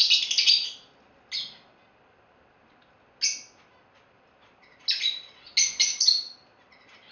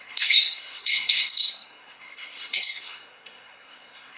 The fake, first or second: second